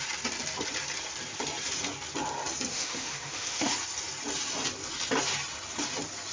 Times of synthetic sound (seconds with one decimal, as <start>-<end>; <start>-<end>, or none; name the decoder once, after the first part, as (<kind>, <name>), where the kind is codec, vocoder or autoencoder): 2.7-3.7 (autoencoder, DAC-VAE)